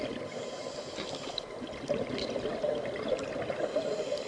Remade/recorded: recorded